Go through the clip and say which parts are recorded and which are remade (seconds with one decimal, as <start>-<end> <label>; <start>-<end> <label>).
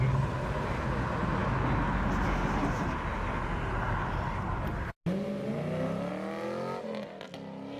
0.0-7.8 recorded